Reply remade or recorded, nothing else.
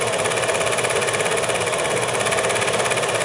recorded